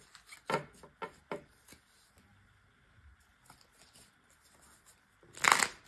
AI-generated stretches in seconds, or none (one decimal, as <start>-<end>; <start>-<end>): none